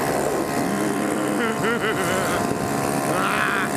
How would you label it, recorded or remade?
recorded